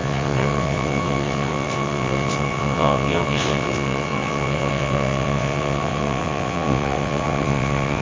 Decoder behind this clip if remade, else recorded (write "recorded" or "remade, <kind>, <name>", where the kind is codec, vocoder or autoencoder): remade, vocoder, WaveNeXt